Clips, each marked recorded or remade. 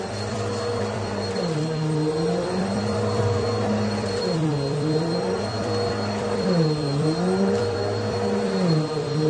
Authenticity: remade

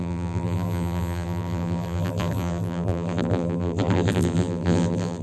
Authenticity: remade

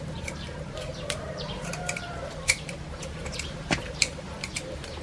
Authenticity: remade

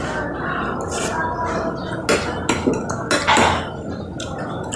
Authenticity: recorded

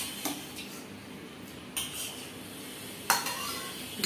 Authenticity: recorded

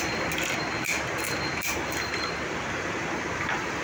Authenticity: remade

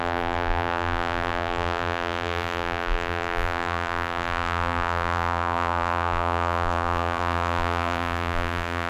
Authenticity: remade